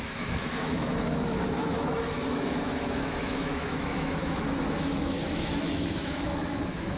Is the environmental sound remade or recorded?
remade